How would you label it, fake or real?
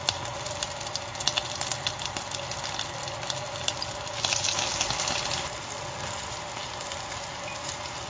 real